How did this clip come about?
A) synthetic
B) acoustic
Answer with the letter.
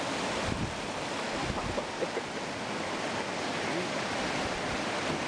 B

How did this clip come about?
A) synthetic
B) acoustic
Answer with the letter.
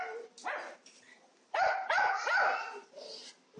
B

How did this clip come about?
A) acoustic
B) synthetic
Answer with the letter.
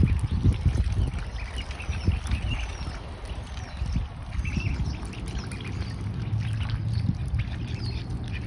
A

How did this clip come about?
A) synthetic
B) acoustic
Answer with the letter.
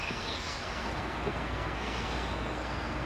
A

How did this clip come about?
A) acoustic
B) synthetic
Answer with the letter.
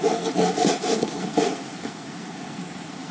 B